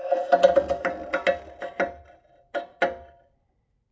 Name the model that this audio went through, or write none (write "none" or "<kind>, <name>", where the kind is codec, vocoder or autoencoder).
none